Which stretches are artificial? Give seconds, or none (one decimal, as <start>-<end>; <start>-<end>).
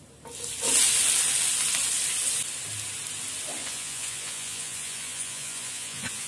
3.6-6.3